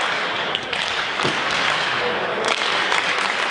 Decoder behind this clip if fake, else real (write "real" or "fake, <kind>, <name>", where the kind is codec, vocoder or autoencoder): fake, codec, DAC